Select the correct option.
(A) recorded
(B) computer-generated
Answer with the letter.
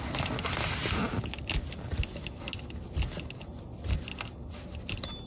A